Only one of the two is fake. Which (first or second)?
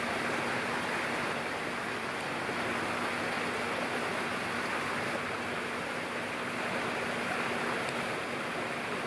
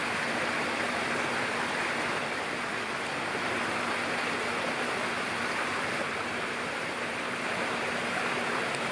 second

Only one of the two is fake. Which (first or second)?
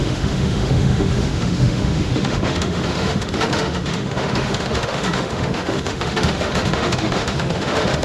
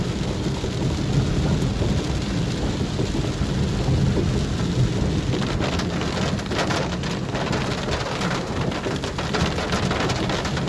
first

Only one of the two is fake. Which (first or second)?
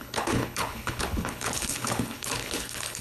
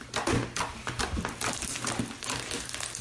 first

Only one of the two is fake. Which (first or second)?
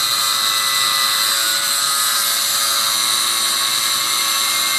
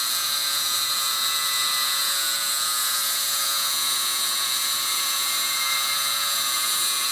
second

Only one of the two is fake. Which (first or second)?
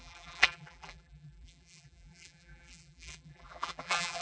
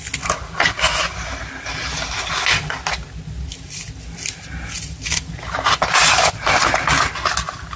first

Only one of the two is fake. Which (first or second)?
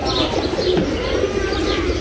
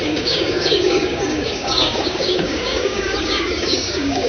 second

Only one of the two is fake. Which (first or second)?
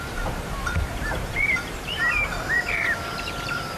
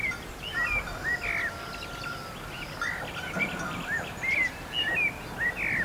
first